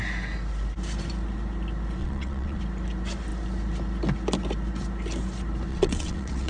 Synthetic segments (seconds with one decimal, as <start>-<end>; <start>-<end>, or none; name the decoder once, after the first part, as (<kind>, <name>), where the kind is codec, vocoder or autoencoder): 2.0-2.6 (vocoder, WaveNeXt); 5.7-6.5